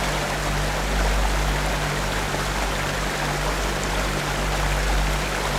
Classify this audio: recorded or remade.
recorded